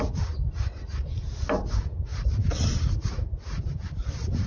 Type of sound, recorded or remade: recorded